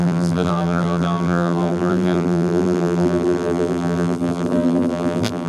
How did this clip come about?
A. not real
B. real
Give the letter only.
A